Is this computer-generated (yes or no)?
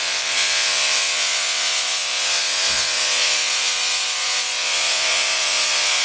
yes